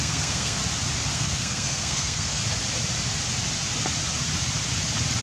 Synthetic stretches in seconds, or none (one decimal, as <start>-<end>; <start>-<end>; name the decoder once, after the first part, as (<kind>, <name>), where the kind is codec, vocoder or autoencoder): 0.0-0.6 (codec, SNAC); 1.1-2.4